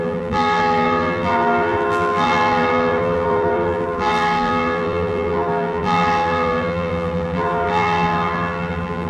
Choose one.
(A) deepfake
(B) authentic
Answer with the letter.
A